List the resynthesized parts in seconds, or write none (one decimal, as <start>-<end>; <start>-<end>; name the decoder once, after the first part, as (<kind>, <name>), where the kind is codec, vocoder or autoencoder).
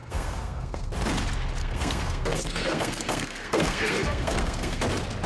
0.0-0.9 (codec, SNAC); 1.6-4.8